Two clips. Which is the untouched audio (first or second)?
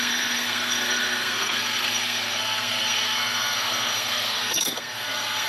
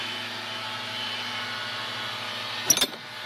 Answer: second